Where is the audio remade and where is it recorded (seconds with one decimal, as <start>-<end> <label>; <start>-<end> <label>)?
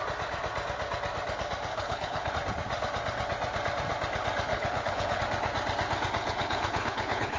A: 0.0-1.7 recorded; 1.7-2.3 remade; 2.3-4.5 recorded; 4.5-5.2 remade; 5.2-6.2 recorded; 6.2-7.4 remade